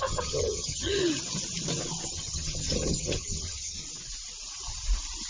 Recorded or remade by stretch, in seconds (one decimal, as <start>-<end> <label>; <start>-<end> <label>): 0.0-1.0 remade; 1.0-2.1 recorded; 2.1-3.8 remade; 3.8-5.3 recorded